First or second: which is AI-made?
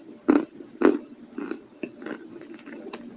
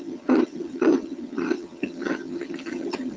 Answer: second